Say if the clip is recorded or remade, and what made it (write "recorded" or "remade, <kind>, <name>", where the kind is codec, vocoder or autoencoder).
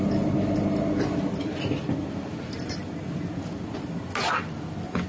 recorded